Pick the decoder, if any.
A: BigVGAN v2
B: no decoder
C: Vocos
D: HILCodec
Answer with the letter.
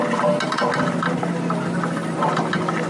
B